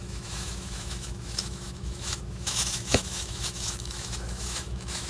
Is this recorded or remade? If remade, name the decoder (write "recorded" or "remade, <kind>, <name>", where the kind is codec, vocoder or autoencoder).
remade, autoencoder, DAC-VAE